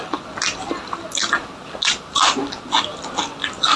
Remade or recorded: recorded